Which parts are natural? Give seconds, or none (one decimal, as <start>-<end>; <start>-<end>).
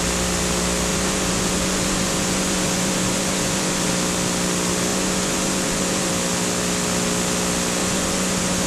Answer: 0.0-0.9; 3.9-4.9; 6.1-7.8